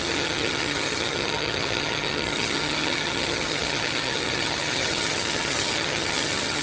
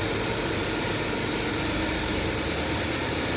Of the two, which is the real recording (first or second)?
second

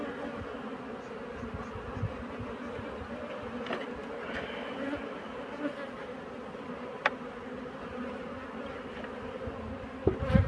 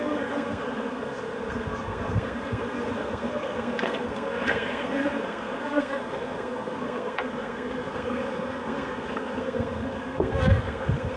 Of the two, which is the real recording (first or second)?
first